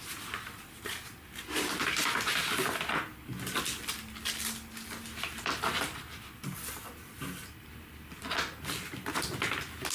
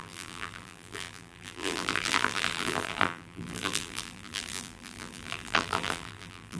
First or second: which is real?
first